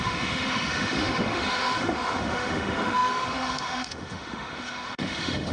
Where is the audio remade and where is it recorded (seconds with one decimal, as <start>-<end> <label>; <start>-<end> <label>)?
0.0-5.5 remade